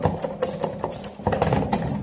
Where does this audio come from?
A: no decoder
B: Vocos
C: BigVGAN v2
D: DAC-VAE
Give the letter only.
A